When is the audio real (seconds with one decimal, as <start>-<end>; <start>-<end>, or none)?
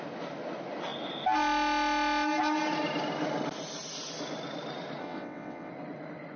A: 0.0-5.0; 5.7-6.4